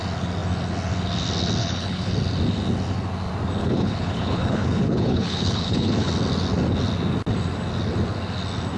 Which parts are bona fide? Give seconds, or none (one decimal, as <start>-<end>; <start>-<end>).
0.0-1.6; 2.1-3.6; 6.1-8.8